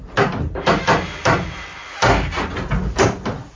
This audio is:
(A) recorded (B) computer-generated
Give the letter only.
A